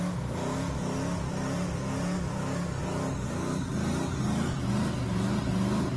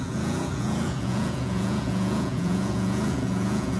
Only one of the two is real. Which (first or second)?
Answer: first